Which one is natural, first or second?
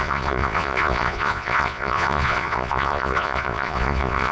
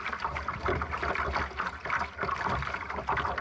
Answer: second